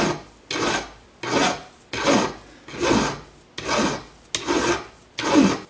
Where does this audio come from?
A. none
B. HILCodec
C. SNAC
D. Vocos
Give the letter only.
A